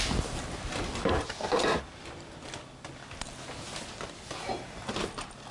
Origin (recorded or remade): recorded